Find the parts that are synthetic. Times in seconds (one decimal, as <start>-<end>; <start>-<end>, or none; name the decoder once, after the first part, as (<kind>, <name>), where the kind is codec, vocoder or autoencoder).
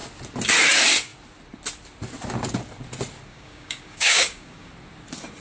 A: 3.3-4.7 (codec, DAC)